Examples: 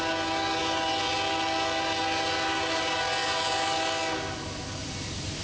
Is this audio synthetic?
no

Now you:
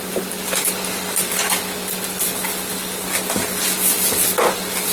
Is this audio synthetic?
no